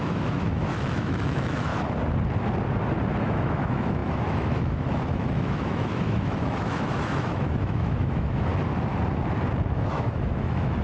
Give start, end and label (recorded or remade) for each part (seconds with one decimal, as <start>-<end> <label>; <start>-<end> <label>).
0.0-1.7 remade; 1.7-3.2 recorded; 3.2-8.5 remade; 8.5-9.7 recorded; 9.7-10.8 remade